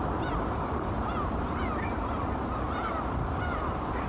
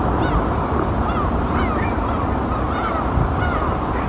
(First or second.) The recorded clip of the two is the second